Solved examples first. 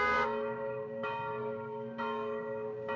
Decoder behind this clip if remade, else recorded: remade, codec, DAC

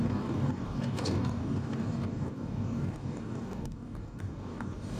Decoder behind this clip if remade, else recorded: remade, codec, DAC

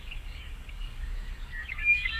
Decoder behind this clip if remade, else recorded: remade, codec, DAC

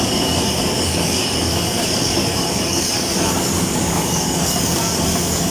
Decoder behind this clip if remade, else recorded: remade, codec, DAC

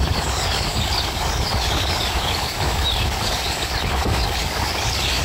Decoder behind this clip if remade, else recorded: remade, codec, DAC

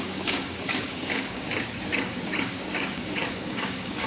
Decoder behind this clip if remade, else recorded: remade, codec, DAC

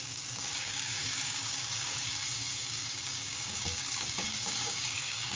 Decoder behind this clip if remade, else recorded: remade, codec, DAC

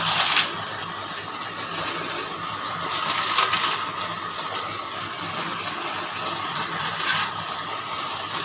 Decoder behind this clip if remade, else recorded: recorded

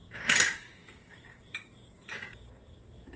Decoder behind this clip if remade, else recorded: remade, codec, DAC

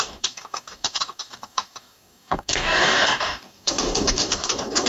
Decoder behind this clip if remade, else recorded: remade, codec, DAC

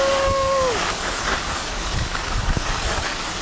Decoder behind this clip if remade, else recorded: remade, codec, DAC